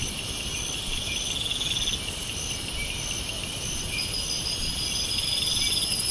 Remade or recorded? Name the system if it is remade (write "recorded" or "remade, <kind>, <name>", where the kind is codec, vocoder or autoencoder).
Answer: recorded